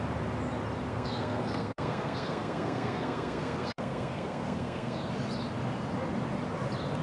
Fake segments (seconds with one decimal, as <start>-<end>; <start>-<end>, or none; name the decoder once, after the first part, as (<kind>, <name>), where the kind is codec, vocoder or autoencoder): 0.9-5.1 (codec, SNAC)

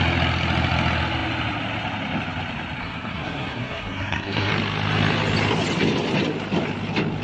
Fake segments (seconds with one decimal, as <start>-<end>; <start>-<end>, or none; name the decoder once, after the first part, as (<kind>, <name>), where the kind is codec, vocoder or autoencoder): 2.8-4.5 (codec, SNAC)

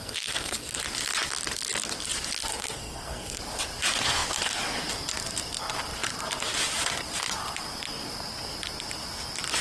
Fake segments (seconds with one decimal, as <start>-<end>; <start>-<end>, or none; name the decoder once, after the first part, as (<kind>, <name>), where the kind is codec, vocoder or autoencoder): 0.0-0.8 (codec, SNAC); 2.5-3.4